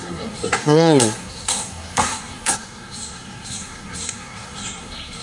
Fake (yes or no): yes